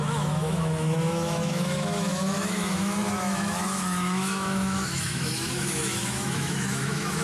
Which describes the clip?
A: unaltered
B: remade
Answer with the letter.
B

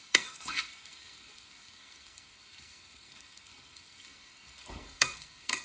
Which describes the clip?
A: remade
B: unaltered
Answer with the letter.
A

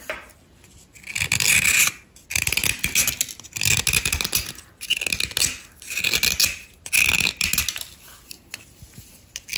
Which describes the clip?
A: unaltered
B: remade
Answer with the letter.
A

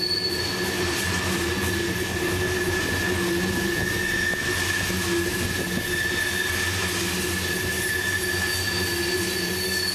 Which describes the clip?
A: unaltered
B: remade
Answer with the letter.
A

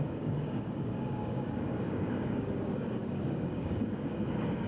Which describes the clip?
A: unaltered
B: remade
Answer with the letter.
B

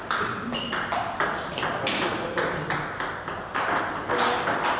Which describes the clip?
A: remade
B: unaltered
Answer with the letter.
B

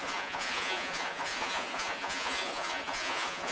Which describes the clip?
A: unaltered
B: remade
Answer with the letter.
B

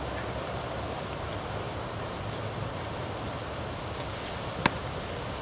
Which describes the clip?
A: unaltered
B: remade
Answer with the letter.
A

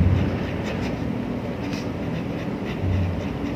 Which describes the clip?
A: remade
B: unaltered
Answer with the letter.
B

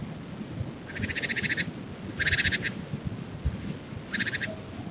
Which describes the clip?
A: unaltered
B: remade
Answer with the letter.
A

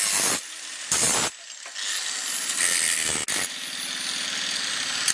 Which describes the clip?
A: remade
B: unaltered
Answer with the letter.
B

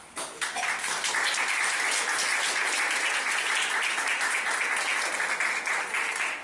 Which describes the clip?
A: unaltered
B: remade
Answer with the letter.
A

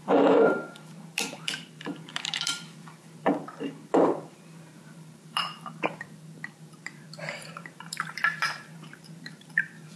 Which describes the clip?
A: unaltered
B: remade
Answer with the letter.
B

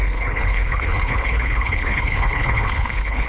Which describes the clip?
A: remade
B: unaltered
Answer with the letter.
A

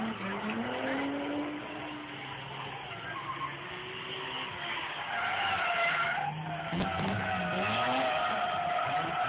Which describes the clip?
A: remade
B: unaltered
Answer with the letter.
B